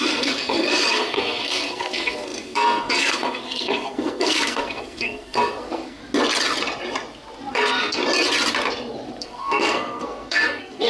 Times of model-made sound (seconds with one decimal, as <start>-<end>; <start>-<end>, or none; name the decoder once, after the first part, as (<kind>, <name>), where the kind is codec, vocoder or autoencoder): 0.0-6.0 (codec, SNAC); 7.5-8.0; 9.2-10.9